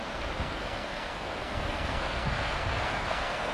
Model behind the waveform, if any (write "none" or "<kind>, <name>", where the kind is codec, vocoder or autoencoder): codec, SNAC